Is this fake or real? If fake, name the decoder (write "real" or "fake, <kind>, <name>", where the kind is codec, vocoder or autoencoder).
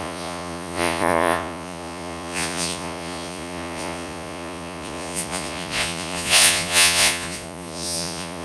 fake, vocoder, Vocos